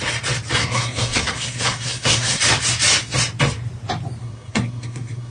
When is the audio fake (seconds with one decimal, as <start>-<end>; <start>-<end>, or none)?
0.6-2.4; 4.2-5.3